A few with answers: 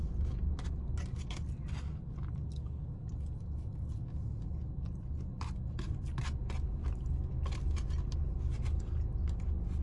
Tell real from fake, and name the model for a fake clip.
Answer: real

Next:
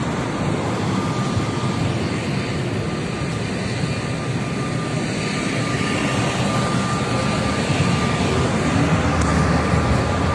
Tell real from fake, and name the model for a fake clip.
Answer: real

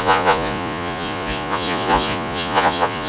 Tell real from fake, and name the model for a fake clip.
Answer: fake, vocoder, Vocos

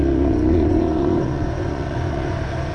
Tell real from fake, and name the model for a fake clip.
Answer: fake, vocoder, Vocos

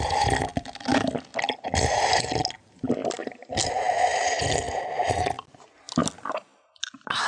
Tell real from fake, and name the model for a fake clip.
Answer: real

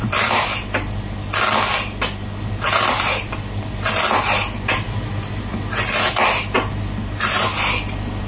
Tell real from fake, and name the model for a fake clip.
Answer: real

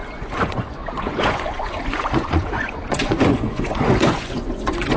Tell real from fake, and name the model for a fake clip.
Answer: fake, vocoder, Vocos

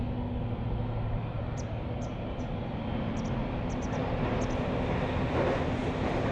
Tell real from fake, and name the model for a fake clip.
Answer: real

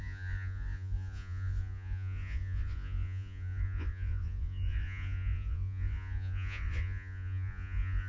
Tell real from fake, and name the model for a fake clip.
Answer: fake, vocoder, Vocos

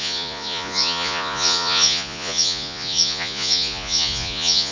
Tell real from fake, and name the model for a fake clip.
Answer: fake, vocoder, Vocos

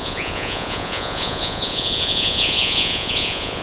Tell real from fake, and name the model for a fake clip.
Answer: fake, vocoder, Vocos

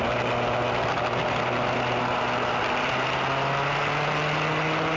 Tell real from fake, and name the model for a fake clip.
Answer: real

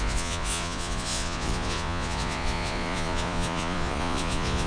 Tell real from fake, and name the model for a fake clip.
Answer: fake, vocoder, Vocos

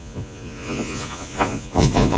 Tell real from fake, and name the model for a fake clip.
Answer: fake, vocoder, Vocos